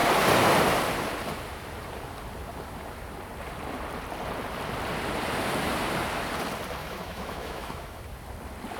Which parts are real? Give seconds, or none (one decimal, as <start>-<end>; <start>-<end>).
0.0-6.8; 8.0-8.8